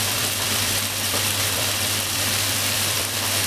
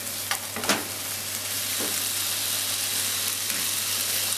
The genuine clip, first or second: second